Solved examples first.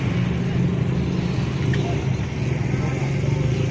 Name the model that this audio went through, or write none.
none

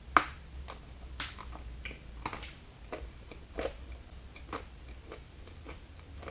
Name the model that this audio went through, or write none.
none